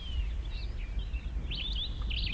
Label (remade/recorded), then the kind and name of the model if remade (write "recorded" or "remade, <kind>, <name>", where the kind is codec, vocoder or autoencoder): recorded